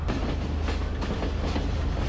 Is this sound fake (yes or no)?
no